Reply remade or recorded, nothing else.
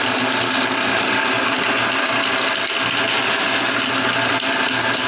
recorded